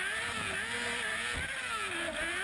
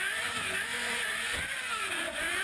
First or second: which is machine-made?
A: second